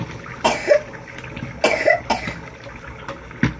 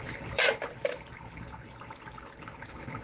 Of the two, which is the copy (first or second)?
second